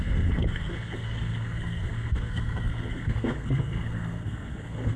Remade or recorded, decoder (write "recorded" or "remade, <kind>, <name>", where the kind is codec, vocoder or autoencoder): remade, codec, SNAC